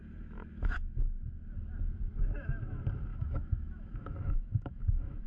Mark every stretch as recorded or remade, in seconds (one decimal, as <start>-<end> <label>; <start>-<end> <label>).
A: 0.0-1.0 remade; 1.0-3.1 recorded; 3.1-5.3 remade